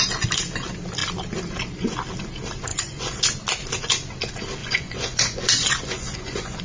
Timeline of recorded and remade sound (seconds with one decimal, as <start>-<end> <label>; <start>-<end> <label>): 0.0-2.7 recorded; 2.7-3.2 remade; 3.2-4.6 recorded; 4.6-6.6 remade